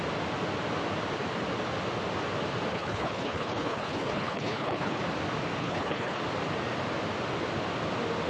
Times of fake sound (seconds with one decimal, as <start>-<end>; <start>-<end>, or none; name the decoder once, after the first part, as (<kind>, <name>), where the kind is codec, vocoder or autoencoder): 2.7-5.0 (codec, HILCodec); 5.6-6.2